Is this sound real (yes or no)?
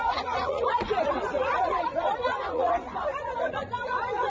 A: no